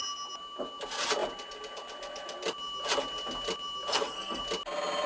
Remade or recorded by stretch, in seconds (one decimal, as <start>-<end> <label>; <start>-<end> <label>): 0.0-3.9 recorded; 3.9-4.4 remade; 4.4-5.1 recorded